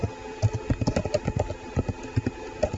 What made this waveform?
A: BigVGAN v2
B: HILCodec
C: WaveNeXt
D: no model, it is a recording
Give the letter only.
D